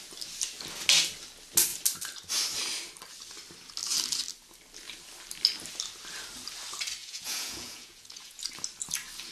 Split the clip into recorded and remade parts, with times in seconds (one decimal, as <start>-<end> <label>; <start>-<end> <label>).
0.0-7.0 recorded; 7.0-8.4 remade; 8.4-9.3 recorded